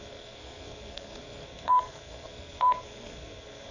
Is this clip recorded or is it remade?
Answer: remade